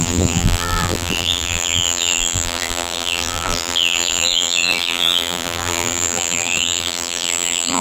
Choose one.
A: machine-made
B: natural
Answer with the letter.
A